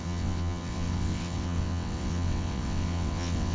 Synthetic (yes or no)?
yes